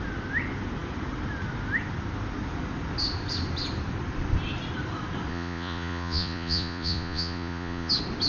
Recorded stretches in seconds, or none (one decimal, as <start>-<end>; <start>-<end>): 0.0-5.3; 7.9-8.3